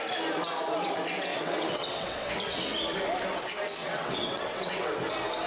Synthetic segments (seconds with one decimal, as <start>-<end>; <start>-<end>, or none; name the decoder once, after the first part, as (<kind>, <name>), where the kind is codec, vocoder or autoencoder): 1.3-2.3 (vocoder, WaveNeXt); 3.8-4.9